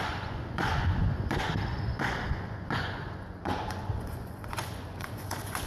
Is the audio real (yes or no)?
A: no